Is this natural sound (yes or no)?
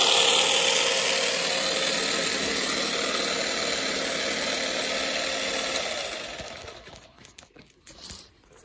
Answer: yes